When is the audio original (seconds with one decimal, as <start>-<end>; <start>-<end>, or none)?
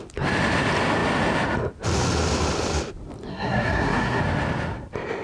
0.0-3.3; 4.2-5.2